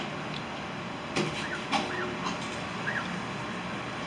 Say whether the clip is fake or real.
real